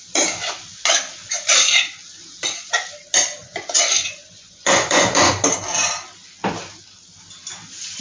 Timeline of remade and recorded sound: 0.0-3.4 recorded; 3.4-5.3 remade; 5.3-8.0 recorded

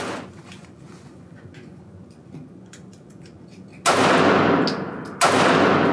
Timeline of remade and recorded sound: 0.0-3.7 remade; 3.7-5.9 recorded

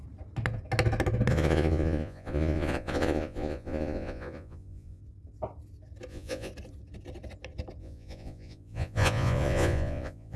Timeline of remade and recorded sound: 0.0-1.3 recorded; 1.3-5.0 remade; 5.0-6.1 recorded; 6.1-6.5 remade; 6.5-7.8 recorded; 7.8-10.4 remade